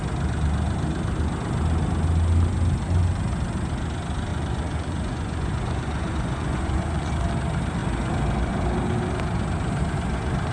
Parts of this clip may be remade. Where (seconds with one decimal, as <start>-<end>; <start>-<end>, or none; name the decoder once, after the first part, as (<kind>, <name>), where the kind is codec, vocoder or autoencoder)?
4.3-7.1 (vocoder, Vocos)